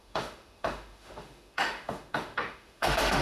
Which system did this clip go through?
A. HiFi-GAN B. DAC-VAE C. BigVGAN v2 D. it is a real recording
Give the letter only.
B